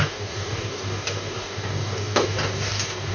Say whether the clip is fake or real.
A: fake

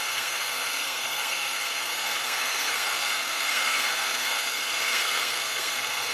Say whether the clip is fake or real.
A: fake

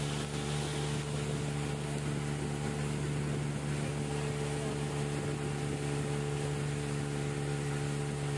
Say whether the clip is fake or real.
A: real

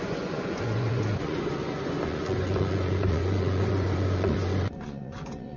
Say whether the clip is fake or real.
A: fake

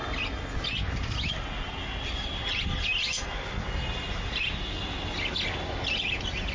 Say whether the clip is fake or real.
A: real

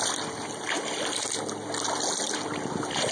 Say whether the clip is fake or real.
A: real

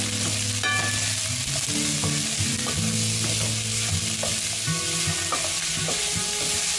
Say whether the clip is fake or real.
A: real